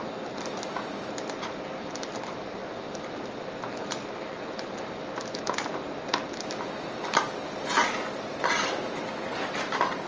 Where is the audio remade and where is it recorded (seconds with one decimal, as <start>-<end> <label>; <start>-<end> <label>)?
0.0-10.1 recorded